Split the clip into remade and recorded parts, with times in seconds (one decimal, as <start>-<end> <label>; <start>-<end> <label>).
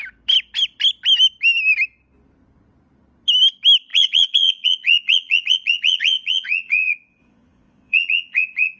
0.0-3.9 recorded; 3.9-8.8 remade